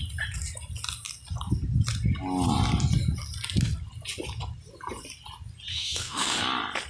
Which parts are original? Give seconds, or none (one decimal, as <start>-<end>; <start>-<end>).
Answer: 0.0-5.7; 6.4-6.9